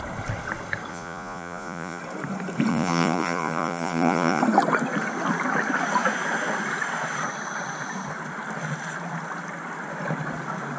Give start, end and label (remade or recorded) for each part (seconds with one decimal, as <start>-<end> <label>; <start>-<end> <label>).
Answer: 0.0-0.9 recorded; 0.9-2.0 remade; 2.0-2.7 recorded; 2.7-4.4 remade; 4.4-10.8 recorded